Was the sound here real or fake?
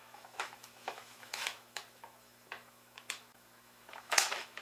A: fake